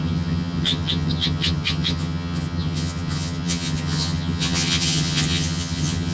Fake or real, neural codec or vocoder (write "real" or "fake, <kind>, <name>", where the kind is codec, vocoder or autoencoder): fake, vocoder, HiFi-GAN